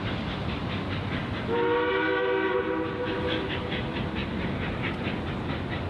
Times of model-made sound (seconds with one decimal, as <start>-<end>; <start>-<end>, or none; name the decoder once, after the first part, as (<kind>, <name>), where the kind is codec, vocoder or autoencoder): none